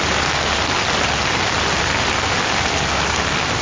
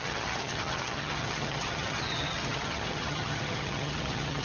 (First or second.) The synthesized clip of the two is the second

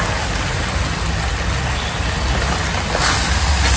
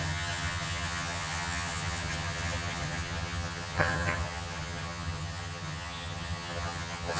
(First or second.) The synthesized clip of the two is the second